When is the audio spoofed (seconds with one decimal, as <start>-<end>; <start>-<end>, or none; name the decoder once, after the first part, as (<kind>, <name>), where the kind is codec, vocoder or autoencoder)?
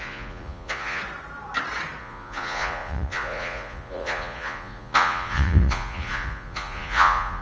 0.0-1.0 (vocoder, Vocos); 2.0-7.4